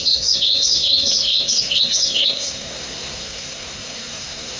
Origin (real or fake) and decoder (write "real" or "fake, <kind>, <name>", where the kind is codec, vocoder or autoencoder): fake, codec, SNAC